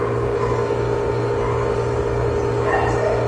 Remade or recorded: recorded